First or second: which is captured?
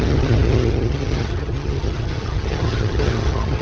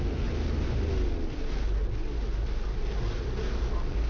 second